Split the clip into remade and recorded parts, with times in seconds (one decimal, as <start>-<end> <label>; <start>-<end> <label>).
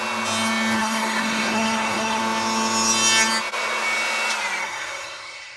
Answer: 0.0-0.8 recorded; 0.8-2.2 remade; 2.2-4.6 recorded; 4.6-5.6 remade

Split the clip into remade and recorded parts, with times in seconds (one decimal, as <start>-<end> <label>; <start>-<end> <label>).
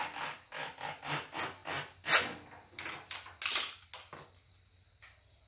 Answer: 0.0-5.5 recorded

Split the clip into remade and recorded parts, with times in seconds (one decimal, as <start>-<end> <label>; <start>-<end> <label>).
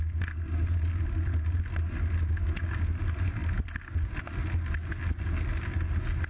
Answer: 0.0-6.3 recorded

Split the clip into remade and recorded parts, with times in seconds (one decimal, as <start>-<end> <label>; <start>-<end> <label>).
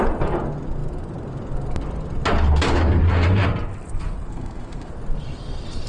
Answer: 0.0-4.3 recorded; 4.3-4.9 remade; 4.9-5.9 recorded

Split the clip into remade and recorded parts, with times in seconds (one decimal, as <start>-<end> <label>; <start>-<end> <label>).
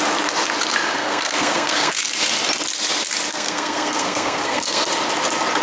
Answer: 0.0-1.0 recorded; 1.0-2.0 remade; 2.0-3.3 recorded; 3.3-4.9 remade; 4.9-5.6 recorded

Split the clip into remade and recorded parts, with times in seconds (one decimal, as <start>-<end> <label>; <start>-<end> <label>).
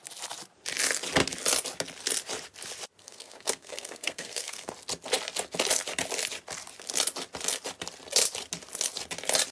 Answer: 0.0-3.0 recorded; 3.0-4.7 remade; 4.7-9.5 recorded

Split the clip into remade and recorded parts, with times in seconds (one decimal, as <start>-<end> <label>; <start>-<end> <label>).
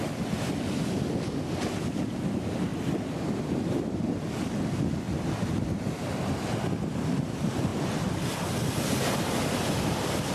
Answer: 0.0-10.3 recorded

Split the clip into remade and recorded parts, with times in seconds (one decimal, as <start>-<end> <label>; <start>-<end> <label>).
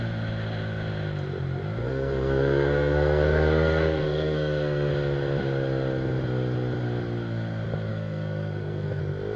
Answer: 0.0-1.8 recorded; 1.8-4.9 remade; 4.9-7.9 recorded; 7.9-9.0 remade; 9.0-9.4 recorded